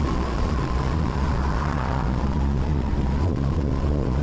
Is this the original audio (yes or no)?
no